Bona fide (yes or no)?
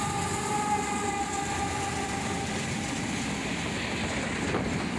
yes